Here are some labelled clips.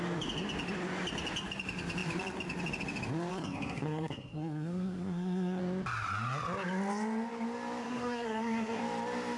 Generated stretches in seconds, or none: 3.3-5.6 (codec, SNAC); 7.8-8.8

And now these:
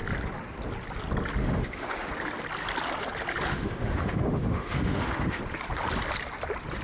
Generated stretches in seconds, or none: 1.4-2.1 (autoencoder, DAC-VAE); 3.5-5.4

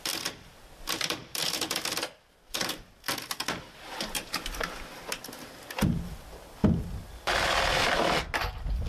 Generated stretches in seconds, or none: none

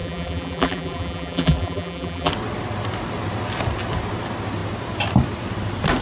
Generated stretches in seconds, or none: 0.0-2.3 (vocoder, BigVGAN v2)

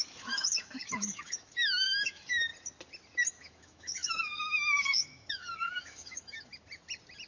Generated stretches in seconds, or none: 0.0-2.5 (autoencoder, DAC-VAE); 3.3-6.5